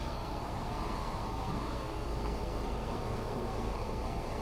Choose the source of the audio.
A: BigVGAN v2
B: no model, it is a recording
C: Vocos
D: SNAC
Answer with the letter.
D